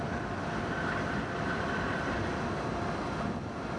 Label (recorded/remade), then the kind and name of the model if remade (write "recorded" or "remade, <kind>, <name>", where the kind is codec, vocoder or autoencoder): recorded